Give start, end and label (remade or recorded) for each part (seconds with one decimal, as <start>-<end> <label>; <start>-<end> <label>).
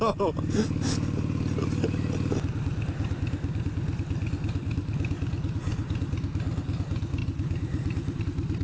0.0-7.2 recorded; 7.2-8.2 remade; 8.2-8.6 recorded